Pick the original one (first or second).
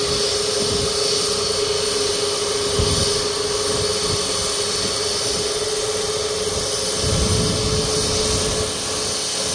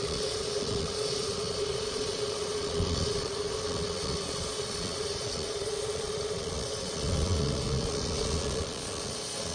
first